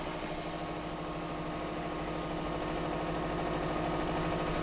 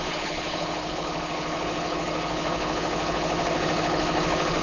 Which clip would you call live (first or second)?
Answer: first